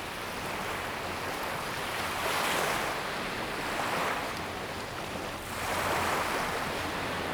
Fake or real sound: real